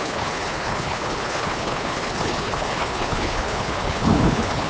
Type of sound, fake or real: fake